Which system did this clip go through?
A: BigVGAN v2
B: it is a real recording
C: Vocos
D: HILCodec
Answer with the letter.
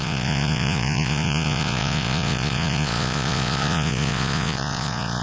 C